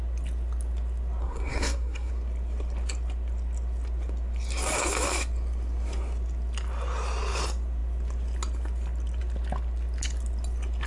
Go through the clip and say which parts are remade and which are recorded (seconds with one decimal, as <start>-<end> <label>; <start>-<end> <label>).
0.0-1.2 recorded; 1.2-2.1 remade; 2.1-10.9 recorded